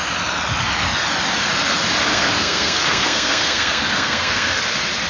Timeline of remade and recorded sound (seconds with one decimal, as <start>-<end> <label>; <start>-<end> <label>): 0.0-2.1 recorded; 2.1-4.6 remade; 4.6-5.1 recorded